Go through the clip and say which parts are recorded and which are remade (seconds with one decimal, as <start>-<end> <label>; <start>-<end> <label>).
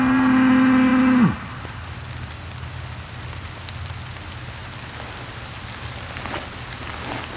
0.0-7.4 recorded